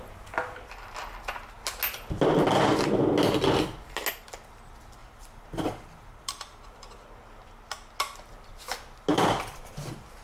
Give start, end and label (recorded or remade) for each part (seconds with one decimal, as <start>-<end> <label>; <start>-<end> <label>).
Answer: 0.0-5.0 recorded; 5.0-7.0 remade; 7.0-9.1 recorded; 9.1-9.6 remade; 9.6-10.2 recorded